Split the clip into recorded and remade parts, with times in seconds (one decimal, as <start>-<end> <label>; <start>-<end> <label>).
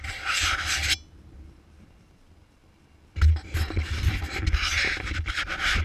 0.0-5.8 recorded